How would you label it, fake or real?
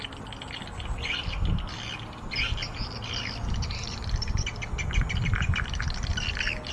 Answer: real